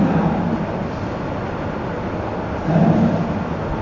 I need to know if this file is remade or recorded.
recorded